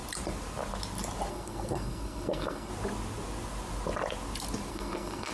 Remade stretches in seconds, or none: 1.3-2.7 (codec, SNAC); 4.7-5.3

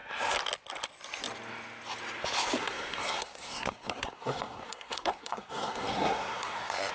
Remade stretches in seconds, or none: 2.6-6.9 (codec, SNAC)

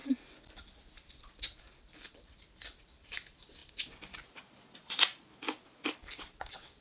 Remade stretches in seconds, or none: none

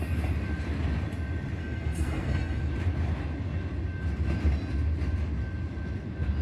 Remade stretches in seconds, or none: 1.6-2.6 (codec, SNAC)